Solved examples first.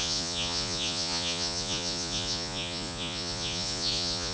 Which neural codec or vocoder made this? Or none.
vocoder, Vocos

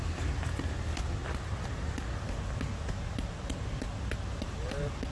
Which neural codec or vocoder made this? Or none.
none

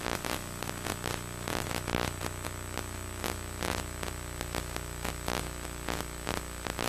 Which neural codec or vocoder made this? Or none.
none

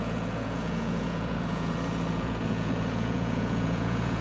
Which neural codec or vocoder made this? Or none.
vocoder, Vocos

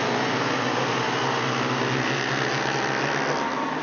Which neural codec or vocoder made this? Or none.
none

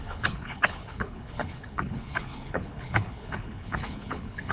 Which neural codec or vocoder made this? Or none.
codec, HILCodec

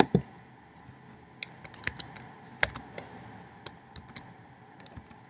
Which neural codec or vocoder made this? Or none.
none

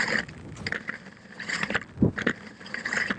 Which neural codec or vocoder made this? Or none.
none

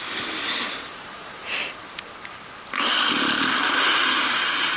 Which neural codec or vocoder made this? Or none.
none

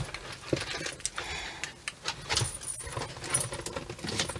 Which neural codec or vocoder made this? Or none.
none